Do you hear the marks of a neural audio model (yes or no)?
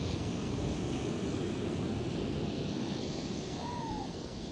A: yes